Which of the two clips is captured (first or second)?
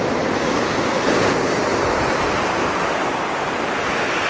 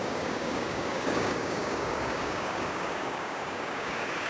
first